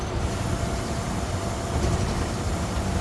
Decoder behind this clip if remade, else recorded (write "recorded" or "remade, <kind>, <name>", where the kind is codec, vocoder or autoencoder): recorded